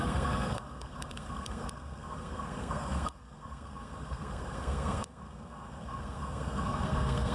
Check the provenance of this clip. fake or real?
fake